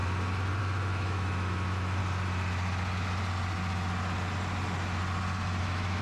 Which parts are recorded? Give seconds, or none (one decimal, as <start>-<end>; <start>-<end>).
0.0-0.6; 2.0-5.6